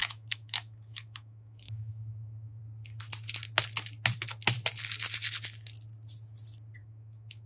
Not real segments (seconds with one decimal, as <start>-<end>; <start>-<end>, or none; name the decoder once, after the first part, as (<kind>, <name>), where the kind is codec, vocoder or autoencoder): 0.0-2.6 (autoencoder, DAC-VAE); 6.8-7.5